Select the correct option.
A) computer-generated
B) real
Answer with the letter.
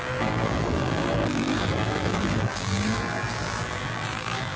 A